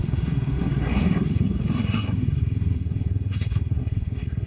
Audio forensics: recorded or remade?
remade